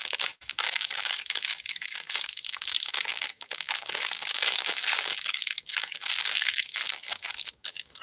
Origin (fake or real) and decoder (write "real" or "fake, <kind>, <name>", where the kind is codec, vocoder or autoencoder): fake, codec, DAC